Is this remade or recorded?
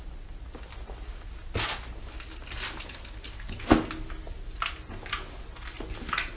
recorded